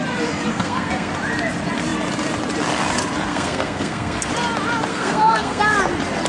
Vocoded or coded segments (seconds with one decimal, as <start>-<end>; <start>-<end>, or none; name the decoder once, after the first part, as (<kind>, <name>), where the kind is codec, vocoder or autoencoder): 0.5-1.1 (codec, SNAC); 3.3-4.3; 4.9-5.6